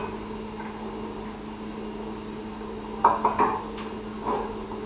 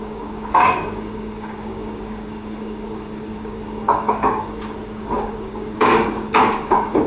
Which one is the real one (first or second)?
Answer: first